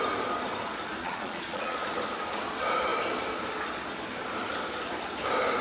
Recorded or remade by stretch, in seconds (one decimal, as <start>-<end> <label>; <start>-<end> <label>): 0.0-1.0 recorded; 1.0-1.9 remade; 1.9-5.6 recorded